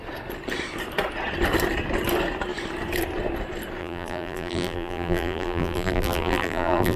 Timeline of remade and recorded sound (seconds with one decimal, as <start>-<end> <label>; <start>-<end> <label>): 0.0-3.8 recorded; 3.8-7.0 remade